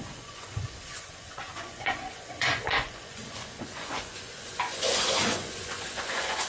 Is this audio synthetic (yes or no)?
yes